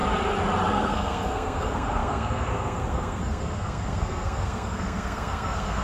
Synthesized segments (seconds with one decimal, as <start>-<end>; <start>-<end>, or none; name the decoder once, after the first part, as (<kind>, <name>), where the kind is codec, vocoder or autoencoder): 0.7-5.8 (codec, SNAC)